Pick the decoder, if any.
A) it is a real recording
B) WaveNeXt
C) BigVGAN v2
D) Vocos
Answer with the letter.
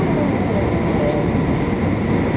A